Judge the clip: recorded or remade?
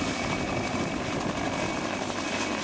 recorded